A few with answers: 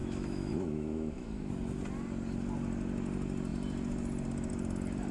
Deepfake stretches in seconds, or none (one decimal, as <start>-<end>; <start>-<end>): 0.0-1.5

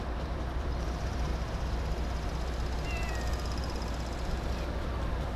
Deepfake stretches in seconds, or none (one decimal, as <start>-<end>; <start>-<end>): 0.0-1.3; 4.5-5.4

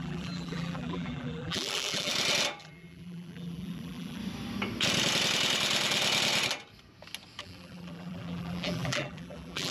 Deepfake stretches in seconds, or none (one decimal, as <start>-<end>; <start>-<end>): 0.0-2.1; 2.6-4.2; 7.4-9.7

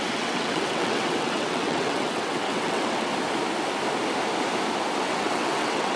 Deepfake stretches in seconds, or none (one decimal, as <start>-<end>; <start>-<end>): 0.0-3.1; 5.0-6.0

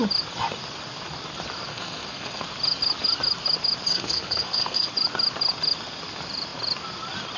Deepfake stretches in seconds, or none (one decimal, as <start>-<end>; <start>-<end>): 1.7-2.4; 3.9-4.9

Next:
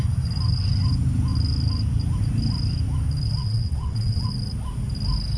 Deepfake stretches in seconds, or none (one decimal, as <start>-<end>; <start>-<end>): 3.4-4.3